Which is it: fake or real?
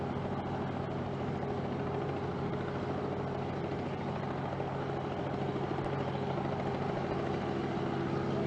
real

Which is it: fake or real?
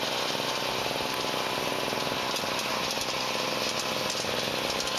real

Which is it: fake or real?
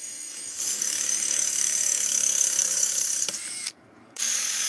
fake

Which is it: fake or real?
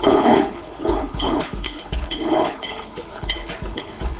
fake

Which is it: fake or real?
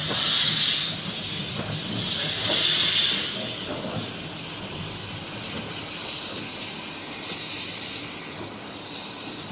real